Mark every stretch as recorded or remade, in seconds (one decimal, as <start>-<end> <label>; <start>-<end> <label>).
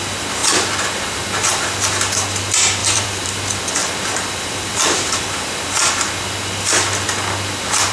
0.0-2.8 recorded; 2.8-3.4 remade; 3.4-3.8 recorded; 3.8-5.9 remade; 5.9-7.9 recorded